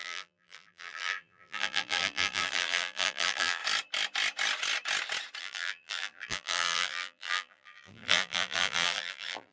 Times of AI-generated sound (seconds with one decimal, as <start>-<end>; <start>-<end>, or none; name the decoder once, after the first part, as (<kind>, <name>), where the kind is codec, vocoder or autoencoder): 0.0-3.6 (vocoder, BigVGAN v2); 5.4-9.5